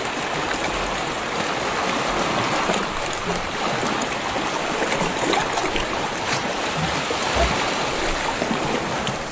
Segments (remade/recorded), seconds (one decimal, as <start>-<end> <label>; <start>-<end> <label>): 0.0-5.4 recorded; 5.4-6.9 remade; 6.9-9.3 recorded